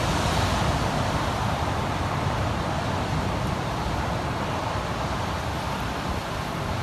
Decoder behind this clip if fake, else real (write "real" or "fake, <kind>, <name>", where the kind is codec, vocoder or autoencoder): real